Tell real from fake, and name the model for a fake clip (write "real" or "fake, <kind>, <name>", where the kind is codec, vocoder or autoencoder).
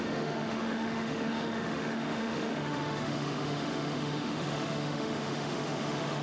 fake, autoencoder, DAC-VAE